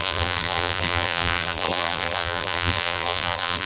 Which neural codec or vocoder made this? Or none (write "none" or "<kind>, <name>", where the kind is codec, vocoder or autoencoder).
vocoder, BigVGAN v2